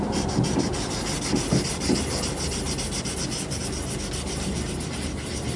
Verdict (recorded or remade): recorded